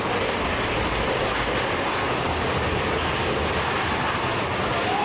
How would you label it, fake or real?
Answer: real